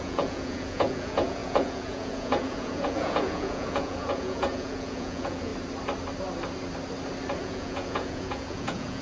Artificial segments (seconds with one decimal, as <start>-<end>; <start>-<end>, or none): 0.0-5.5; 7.4-9.0